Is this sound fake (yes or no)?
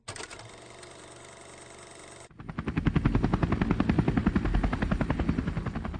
no